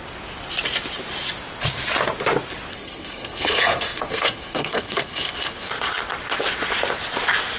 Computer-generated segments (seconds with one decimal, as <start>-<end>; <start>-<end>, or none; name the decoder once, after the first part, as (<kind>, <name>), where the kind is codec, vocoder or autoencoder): 2.7-5.7 (codec, SNAC)